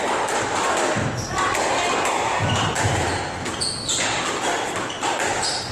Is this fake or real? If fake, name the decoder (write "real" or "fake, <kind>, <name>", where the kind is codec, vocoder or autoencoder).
real